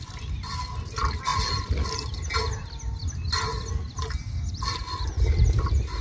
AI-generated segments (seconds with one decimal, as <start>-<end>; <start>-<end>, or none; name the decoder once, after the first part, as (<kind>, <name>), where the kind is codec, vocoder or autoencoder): none